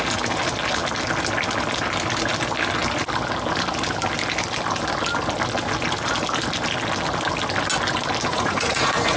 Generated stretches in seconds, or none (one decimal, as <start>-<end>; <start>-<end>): 8.3-9.2